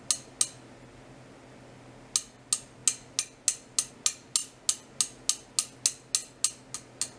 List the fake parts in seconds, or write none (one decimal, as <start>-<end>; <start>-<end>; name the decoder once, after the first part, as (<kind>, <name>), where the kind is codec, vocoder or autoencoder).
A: none